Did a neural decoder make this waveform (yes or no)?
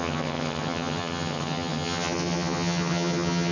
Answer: yes